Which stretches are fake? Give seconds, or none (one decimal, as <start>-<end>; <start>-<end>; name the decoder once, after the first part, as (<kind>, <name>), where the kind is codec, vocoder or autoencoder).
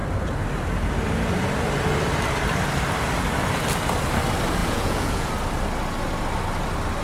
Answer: 4.6-5.3 (vocoder, Vocos)